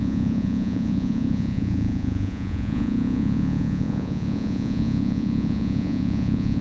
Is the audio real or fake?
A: fake